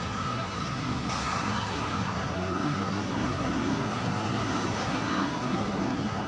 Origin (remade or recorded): remade